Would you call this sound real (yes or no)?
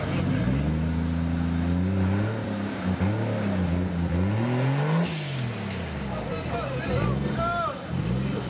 yes